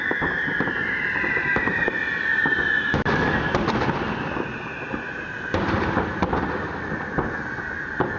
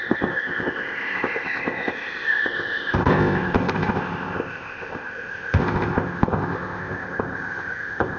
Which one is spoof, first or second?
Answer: second